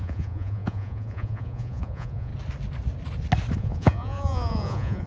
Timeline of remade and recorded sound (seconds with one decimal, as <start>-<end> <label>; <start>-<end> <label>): 0.0-2.3 remade; 2.3-3.6 recorded; 3.6-5.1 remade